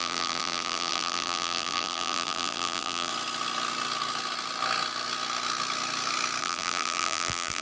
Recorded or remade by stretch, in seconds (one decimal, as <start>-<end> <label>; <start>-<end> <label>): 0.0-3.1 remade; 3.1-6.4 recorded; 6.4-7.6 remade